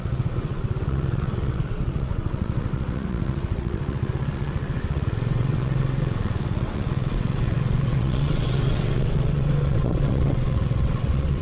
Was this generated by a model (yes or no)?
yes